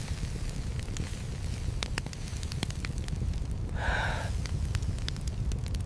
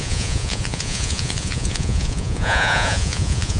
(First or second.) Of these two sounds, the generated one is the second